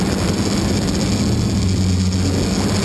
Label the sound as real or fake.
real